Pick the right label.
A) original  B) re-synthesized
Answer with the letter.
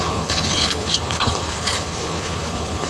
B